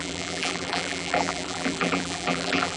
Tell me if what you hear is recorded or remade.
remade